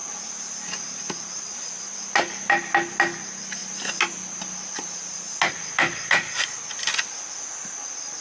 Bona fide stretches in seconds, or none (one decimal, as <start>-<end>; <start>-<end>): 0.0-8.2